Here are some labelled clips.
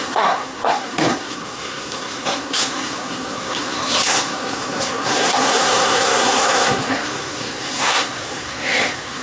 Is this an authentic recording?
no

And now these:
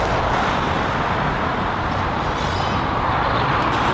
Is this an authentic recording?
yes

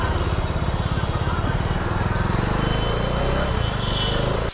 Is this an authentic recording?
yes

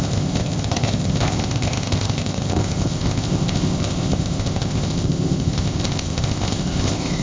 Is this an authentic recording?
no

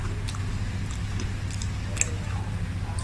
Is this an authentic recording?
yes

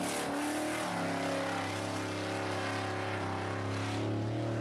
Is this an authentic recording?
yes